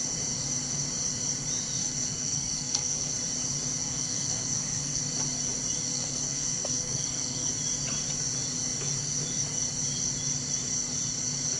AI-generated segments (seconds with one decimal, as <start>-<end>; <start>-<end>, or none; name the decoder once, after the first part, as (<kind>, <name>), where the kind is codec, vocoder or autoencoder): 1.8-3.1 (codec, SNAC); 3.8-5.0; 5.9-7.5